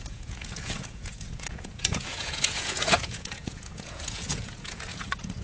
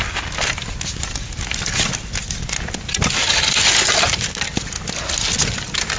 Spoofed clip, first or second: first